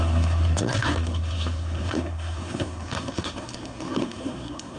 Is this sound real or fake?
fake